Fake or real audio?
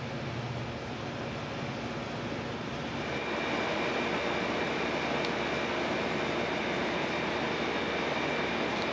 real